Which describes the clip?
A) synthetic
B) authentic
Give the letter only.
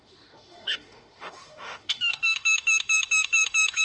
A